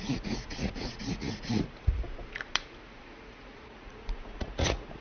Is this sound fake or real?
fake